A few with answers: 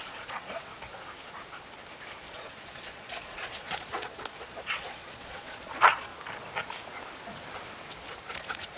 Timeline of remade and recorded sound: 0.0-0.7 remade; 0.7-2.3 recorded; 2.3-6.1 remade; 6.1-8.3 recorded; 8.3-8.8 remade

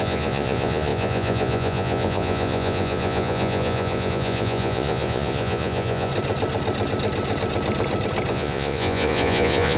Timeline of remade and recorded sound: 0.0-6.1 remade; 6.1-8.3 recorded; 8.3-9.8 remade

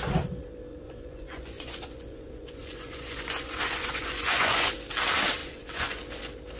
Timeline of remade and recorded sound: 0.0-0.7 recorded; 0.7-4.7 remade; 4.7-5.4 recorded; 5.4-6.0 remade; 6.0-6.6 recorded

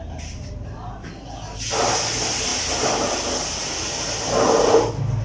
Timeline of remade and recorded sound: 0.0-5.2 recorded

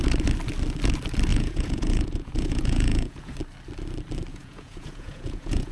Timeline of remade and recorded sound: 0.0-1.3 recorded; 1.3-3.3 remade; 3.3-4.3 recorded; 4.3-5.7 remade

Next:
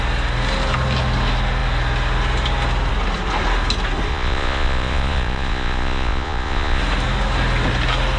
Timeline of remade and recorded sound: 0.0-4.1 recorded; 4.1-6.8 remade; 6.8-8.2 recorded

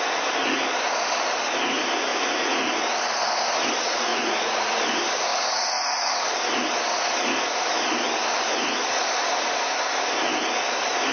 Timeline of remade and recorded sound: 0.0-2.1 recorded; 2.1-2.6 remade; 2.6-4.1 recorded; 4.1-4.8 remade; 4.8-5.3 recorded; 5.3-6.1 remade; 6.1-11.1 recorded